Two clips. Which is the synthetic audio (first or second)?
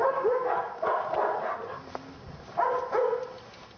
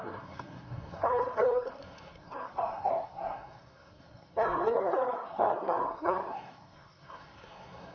second